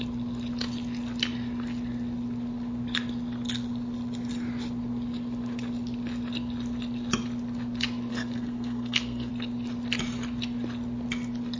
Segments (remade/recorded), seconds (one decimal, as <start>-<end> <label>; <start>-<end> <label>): 0.0-8.1 recorded; 8.1-9.3 remade; 9.3-11.6 recorded